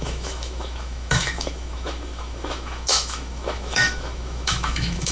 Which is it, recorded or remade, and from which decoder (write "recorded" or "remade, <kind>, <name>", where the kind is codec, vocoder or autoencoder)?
remade, autoencoder, DAC-VAE